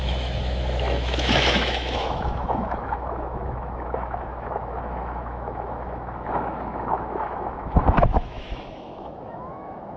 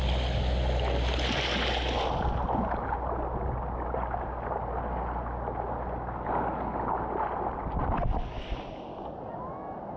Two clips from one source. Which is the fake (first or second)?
first